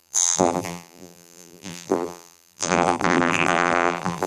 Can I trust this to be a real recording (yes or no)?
no